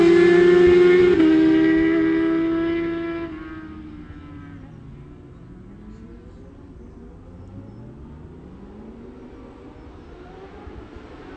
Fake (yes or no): no